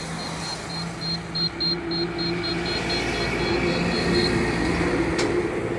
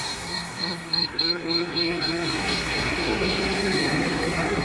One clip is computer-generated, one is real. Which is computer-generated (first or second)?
second